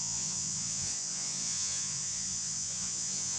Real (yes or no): no